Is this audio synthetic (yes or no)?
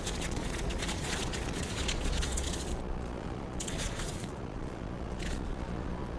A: yes